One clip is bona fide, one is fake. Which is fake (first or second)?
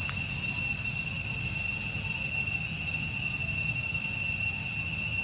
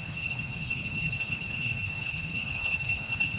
second